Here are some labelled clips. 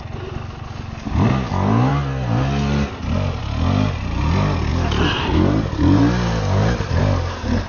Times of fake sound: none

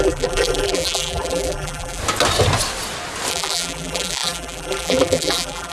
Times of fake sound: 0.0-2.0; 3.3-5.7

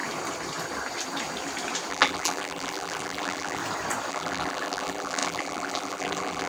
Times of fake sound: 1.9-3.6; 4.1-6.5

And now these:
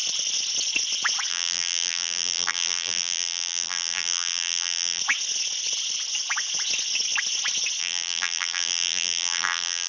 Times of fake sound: 1.3-5.0; 7.8-9.9

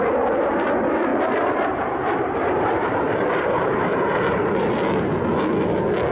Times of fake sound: 1.1-4.6

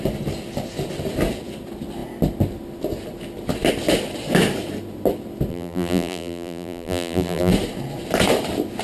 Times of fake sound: 5.5-7.5

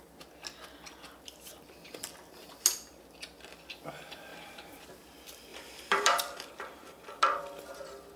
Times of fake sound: 4.3-4.9; 5.5-7.4